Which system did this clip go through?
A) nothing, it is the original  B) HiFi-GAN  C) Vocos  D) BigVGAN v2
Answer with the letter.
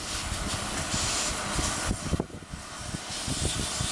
A